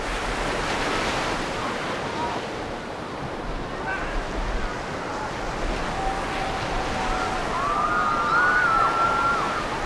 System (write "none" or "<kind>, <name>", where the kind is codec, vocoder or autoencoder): none